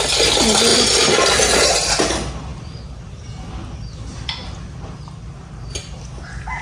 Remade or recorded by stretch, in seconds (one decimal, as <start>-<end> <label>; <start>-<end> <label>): 0.0-6.6 recorded